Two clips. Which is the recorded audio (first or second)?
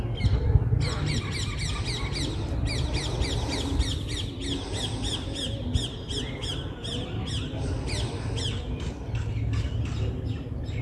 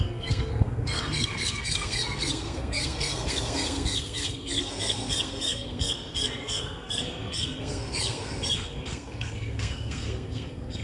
first